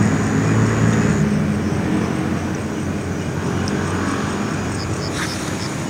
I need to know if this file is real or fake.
real